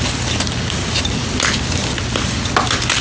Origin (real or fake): real